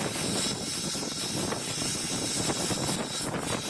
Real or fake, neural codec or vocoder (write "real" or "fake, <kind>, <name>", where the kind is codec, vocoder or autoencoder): real